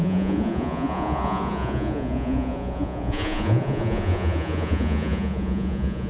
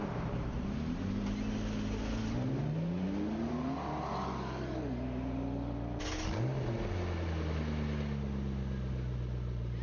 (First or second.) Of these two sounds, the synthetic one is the first